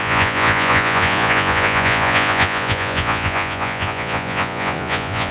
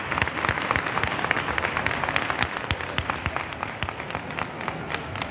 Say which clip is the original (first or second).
second